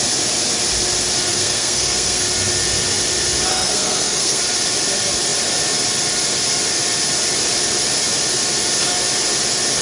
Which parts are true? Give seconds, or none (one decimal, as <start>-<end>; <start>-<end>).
0.0-1.3; 2.2-3.5; 4.4-9.8

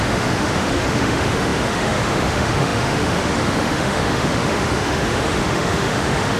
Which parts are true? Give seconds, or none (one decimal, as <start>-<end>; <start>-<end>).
none